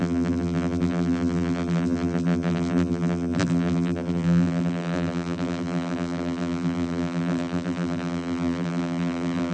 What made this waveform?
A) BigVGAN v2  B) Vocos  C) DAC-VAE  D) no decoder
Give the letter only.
A